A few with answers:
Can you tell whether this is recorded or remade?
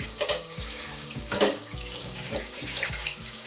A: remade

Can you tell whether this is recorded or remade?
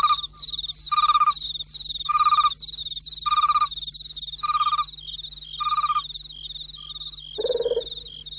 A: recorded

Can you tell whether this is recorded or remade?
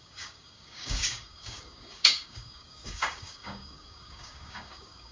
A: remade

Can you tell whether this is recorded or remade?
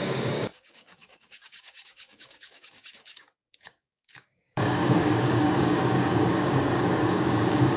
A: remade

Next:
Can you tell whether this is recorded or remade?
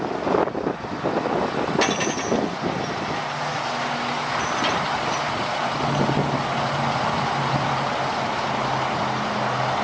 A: recorded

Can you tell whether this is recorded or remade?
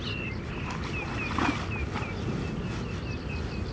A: recorded